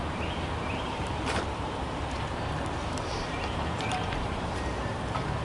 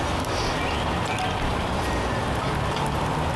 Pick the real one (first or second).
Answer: second